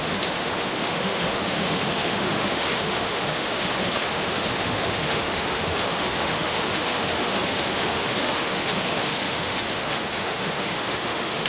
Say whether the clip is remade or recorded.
remade